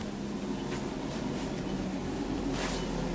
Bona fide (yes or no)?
yes